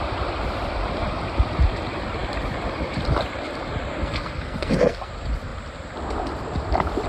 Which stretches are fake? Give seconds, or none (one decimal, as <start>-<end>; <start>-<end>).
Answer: 3.9-5.1